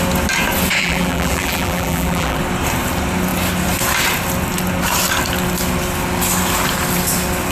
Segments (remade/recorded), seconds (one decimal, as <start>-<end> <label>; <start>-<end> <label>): 0.0-0.8 recorded; 0.8-2.4 remade; 2.4-7.5 recorded